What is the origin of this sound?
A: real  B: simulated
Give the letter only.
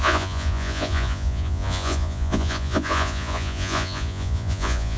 B